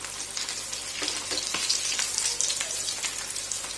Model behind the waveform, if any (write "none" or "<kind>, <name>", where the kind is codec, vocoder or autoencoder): none